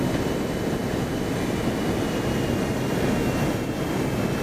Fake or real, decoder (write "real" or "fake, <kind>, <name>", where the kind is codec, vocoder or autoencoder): real